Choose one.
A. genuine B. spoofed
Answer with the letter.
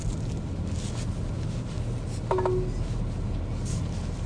A